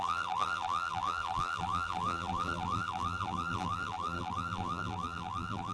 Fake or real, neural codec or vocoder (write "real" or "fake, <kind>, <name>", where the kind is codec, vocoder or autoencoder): fake, vocoder, BigVGAN v2